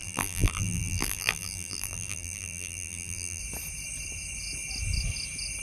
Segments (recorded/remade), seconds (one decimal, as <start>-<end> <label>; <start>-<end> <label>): 0.0-3.4 remade; 3.4-5.6 recorded